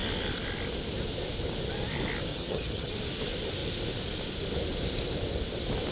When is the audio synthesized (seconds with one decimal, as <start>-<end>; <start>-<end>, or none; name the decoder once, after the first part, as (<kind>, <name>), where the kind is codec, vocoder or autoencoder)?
2.3-2.9 (vocoder, HiFi-GAN)